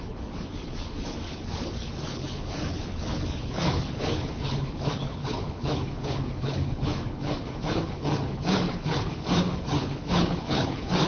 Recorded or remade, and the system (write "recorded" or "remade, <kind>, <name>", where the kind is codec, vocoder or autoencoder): remade, codec, HILCodec